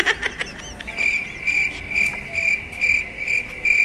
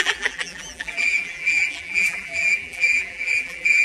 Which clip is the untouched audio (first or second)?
first